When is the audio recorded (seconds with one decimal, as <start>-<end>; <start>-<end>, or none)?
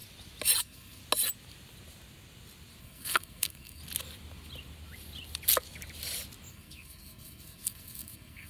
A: 0.0-0.6; 1.0-2.8; 3.8-6.5